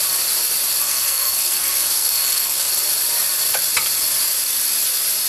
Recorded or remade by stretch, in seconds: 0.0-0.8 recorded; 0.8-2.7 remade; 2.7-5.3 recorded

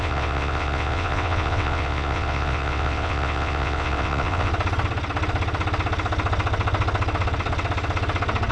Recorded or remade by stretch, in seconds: 0.0-4.5 remade; 4.5-8.5 recorded